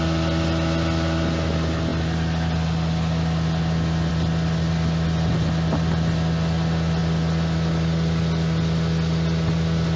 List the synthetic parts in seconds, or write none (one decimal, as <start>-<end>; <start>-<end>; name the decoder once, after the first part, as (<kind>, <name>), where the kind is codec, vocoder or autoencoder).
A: none